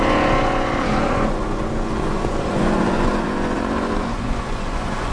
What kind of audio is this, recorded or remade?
remade